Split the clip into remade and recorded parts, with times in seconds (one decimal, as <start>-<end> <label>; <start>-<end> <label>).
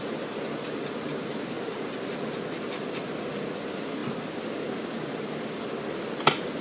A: 0.0-6.6 recorded